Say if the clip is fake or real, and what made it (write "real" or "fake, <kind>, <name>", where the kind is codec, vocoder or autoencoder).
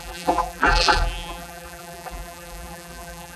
fake, vocoder, BigVGAN v2